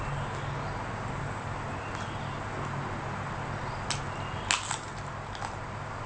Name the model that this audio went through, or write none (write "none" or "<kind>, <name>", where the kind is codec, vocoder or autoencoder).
none